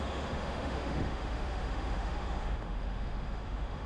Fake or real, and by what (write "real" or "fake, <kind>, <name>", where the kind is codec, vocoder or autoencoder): fake, autoencoder, DAC-VAE